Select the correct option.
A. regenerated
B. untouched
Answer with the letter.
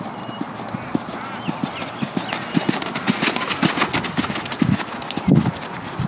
B